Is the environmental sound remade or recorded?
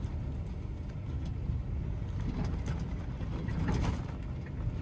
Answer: recorded